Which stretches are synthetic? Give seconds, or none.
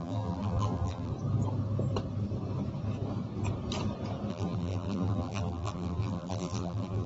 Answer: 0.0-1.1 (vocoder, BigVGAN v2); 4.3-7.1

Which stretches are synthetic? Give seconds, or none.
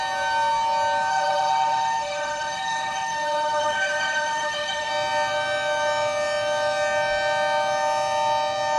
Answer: 1.1-4.9 (autoencoder, DAC-VAE)